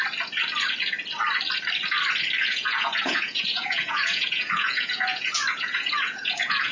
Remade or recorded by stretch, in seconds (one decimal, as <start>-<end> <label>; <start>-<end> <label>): 0.0-2.5 recorded; 2.5-6.7 remade